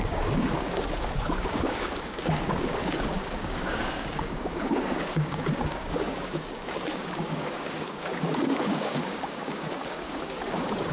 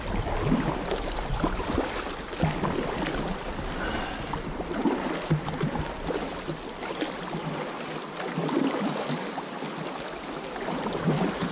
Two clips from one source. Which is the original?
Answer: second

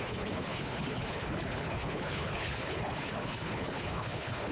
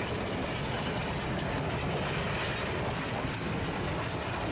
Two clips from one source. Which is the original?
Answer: second